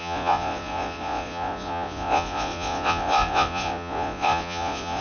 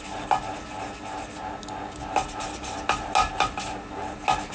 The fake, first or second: first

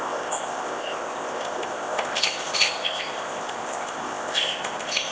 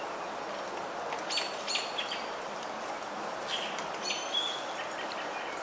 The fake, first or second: first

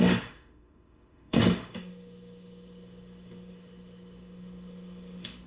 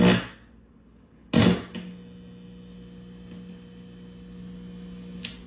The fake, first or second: first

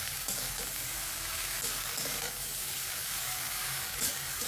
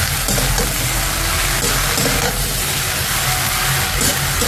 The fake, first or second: first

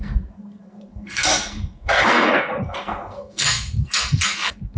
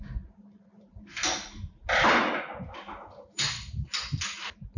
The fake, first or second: first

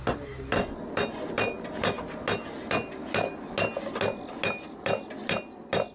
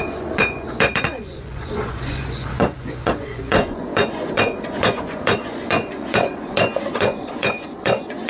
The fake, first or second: second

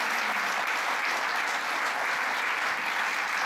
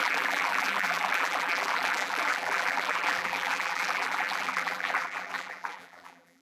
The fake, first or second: second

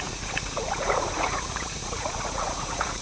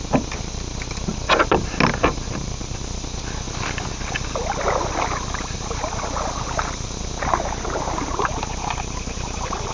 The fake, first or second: first